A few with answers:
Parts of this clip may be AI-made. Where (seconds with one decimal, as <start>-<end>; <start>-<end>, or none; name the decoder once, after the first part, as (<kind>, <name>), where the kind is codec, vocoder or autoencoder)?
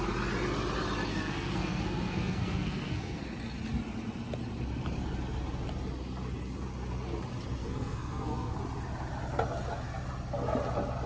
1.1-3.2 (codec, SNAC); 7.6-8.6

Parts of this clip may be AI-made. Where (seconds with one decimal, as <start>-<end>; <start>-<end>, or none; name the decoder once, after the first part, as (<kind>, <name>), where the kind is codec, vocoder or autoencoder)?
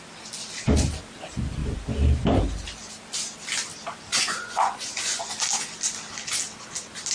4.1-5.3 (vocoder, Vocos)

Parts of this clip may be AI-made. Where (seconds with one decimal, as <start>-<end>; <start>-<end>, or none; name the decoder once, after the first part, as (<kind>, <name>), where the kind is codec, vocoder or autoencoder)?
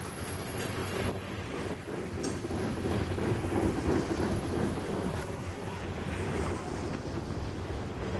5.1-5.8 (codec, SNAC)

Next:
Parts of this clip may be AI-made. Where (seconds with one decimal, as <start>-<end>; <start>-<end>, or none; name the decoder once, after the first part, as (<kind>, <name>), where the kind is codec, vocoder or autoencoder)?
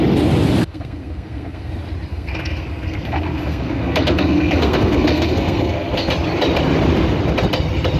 0.6-1.7 (codec, SNAC); 2.1-6.1